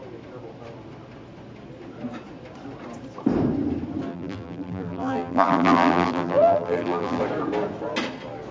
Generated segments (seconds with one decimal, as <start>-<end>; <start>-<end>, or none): 4.1-7.2

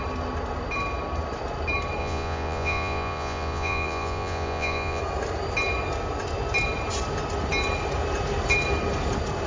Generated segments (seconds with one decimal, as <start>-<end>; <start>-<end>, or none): 2.0-5.0

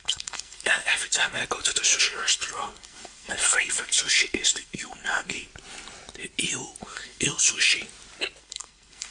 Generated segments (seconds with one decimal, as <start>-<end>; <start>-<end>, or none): 0.0-1.4; 2.0-5.5; 6.8-7.6; 8.4-9.1

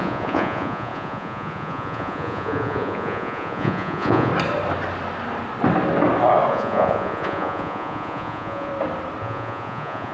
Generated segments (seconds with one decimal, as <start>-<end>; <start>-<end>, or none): 0.0-4.3; 6.5-8.7; 9.2-10.1

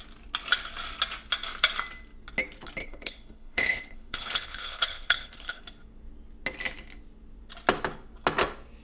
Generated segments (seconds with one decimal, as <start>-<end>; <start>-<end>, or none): 2.8-5.6

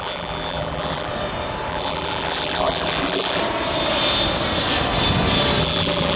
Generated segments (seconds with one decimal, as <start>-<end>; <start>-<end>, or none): 0.0-1.1; 1.7-3.4; 5.6-6.2

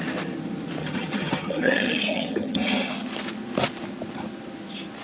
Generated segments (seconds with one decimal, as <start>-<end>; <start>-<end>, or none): 0.8-2.9